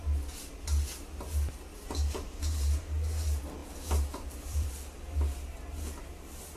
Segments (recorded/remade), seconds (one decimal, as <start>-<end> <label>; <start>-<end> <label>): 0.0-3.6 recorded; 3.6-4.7 remade; 4.7-6.6 recorded